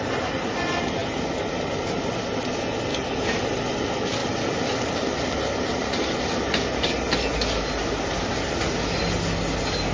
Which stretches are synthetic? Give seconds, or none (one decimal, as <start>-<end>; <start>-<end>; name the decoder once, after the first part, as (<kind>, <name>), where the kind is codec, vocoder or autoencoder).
none